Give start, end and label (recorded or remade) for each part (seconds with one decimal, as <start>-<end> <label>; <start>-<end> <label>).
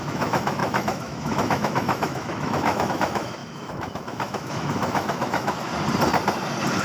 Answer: 0.0-5.7 remade; 5.7-6.8 recorded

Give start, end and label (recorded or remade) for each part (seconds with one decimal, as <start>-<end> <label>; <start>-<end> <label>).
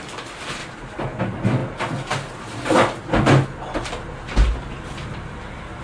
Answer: 0.0-0.6 remade; 0.6-1.2 recorded; 1.2-1.6 remade; 1.6-4.8 recorded; 4.8-5.8 remade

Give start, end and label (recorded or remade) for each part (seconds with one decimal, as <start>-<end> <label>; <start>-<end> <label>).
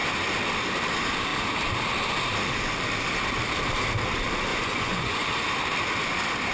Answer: 0.0-4.5 recorded; 4.5-5.3 remade; 5.3-6.5 recorded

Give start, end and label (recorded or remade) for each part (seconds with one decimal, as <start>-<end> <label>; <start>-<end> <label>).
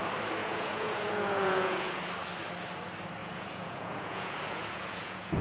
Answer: 0.0-0.4 recorded; 0.4-2.0 remade; 2.0-3.2 recorded; 3.2-5.4 remade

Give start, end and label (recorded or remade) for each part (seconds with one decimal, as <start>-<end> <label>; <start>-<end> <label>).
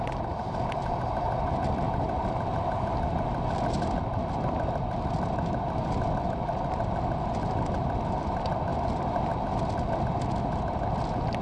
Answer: 0.0-11.4 recorded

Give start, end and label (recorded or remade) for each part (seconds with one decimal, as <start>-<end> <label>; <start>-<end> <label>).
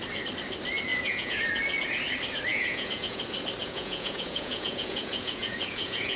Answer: 0.0-0.9 recorded; 0.9-1.4 remade; 1.4-2.5 recorded; 2.5-3.2 remade; 3.2-3.6 recorded; 3.6-6.2 remade